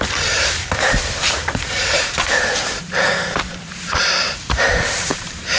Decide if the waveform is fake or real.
fake